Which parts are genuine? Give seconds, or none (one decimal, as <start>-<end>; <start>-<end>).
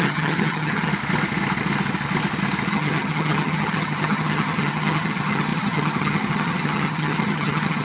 0.9-2.7